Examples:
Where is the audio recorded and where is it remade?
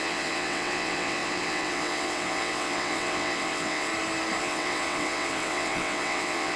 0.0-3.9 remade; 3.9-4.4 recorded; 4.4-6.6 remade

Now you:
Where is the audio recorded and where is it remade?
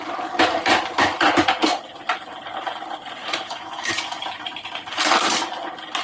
0.0-3.2 recorded; 3.2-3.9 remade; 3.9-6.0 recorded